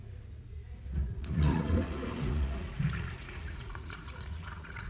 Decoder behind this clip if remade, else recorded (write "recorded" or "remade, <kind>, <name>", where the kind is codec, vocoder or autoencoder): remade, vocoder, Vocos